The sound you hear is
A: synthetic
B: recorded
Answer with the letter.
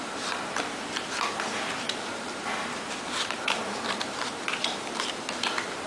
A